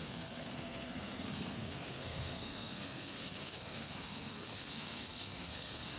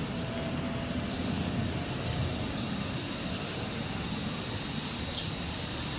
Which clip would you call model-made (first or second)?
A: first